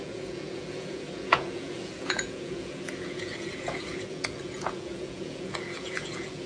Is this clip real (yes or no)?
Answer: no